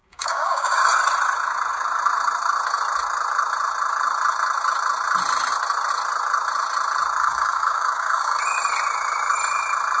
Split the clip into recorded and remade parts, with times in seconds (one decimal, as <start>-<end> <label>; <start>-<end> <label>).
0.0-0.8 remade; 0.8-7.2 recorded; 7.2-8.4 remade; 8.4-10.0 recorded